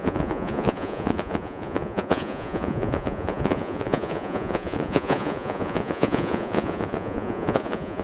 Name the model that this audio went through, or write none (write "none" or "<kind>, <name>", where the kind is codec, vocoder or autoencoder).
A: vocoder, Vocos